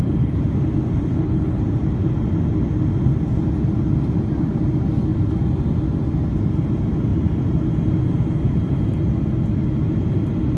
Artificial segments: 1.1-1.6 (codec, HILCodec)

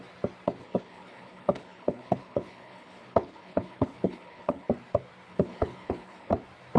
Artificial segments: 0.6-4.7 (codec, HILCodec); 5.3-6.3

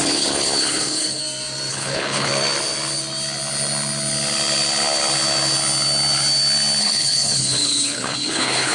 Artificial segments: 0.0-1.2 (codec, HILCodec); 1.7-2.3; 6.8-8.7